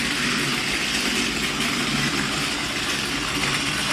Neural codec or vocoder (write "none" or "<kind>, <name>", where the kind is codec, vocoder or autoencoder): none